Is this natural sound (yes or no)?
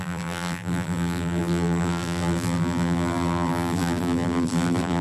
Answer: no